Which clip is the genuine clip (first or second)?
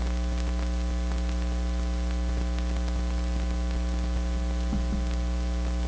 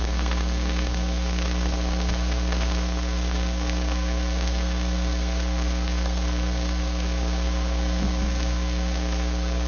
first